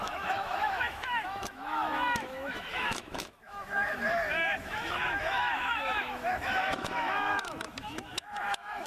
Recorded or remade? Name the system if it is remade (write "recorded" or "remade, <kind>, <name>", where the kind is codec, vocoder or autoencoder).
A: remade, autoencoder, DAC-VAE